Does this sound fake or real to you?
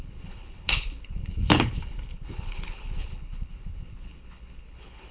fake